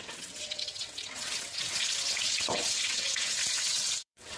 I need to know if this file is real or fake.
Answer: fake